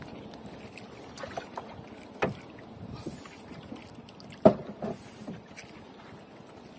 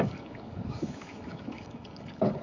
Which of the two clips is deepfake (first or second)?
second